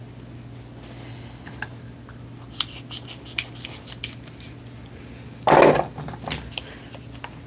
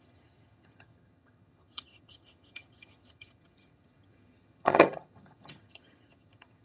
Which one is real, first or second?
first